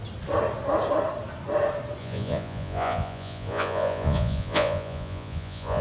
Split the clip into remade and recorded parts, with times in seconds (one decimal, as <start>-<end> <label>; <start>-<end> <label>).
0.0-2.0 recorded; 2.0-5.8 remade